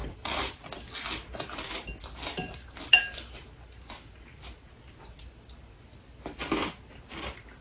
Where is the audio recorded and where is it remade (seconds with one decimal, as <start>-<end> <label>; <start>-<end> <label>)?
0.0-7.6 recorded

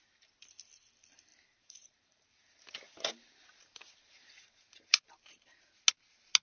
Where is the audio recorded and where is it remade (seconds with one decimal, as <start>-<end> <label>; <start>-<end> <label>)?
0.0-1.3 recorded; 1.3-5.1 remade; 5.1-6.4 recorded

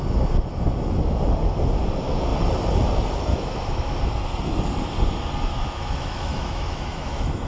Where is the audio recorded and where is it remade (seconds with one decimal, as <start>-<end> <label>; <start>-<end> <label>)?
0.0-3.3 recorded; 3.3-4.0 remade; 4.0-5.5 recorded; 5.5-7.5 remade